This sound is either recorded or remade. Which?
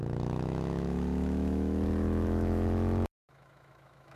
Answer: remade